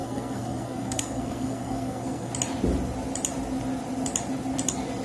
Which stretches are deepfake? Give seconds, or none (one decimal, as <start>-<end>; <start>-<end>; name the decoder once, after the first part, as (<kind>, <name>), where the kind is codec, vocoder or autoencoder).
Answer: 0.0-2.3 (codec, SNAC)